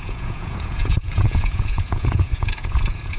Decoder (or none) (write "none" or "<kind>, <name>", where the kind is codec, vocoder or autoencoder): vocoder, Vocos